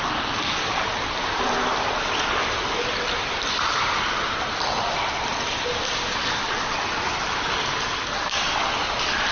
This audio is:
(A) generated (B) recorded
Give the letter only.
B